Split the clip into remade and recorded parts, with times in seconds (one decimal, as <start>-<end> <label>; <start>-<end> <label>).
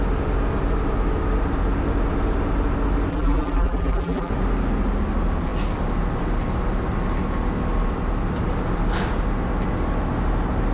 0.0-3.1 recorded; 3.1-4.3 remade; 4.3-10.7 recorded